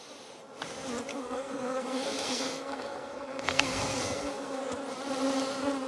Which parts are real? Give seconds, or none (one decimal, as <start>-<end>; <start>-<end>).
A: 0.0-1.1; 4.6-5.9